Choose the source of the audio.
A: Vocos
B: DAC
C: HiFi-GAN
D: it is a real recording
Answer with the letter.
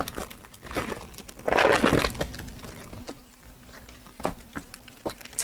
D